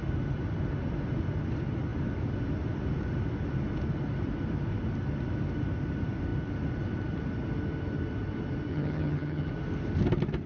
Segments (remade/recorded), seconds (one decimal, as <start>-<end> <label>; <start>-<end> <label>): 0.0-8.7 recorded; 8.7-9.5 remade; 9.5-10.5 recorded